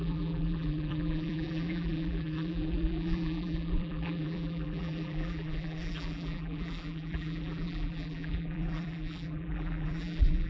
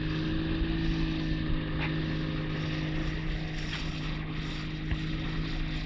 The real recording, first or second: second